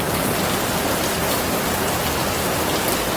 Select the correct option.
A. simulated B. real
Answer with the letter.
B